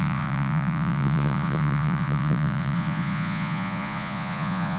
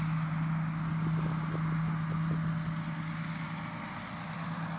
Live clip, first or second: second